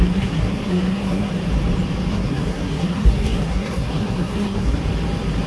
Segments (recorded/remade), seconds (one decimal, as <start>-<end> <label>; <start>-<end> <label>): 0.0-1.3 remade; 1.3-2.1 recorded; 2.1-4.8 remade; 4.8-5.5 recorded